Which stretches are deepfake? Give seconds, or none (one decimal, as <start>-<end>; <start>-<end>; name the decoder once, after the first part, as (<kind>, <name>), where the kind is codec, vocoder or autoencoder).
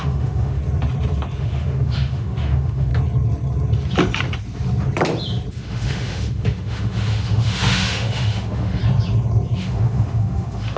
0.0-0.6 (autoencoder, DAC-VAE); 1.4-2.9; 5.5-8.8; 9.6-10.8